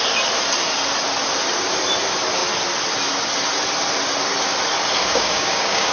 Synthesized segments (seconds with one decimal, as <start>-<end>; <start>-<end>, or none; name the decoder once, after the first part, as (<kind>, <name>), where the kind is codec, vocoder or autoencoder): 5.0-5.9 (codec, DAC)